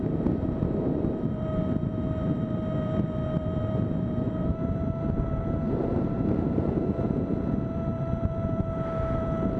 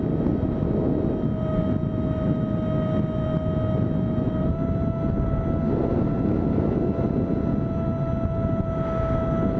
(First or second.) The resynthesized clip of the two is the first